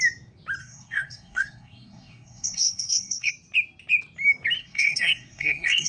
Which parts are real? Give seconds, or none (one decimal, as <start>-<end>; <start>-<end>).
0.0-0.6; 3.3-4.6